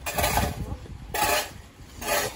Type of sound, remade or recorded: recorded